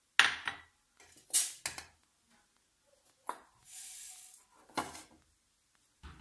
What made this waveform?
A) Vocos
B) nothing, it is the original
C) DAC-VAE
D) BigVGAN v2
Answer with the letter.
B